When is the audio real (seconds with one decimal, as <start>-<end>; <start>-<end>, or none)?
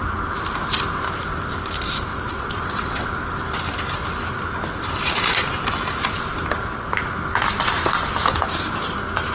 0.0-2.1; 3.1-9.3